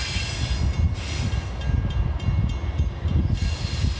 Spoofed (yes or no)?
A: no